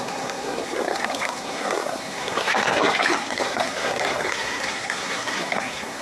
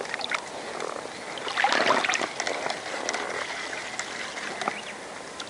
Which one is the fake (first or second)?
first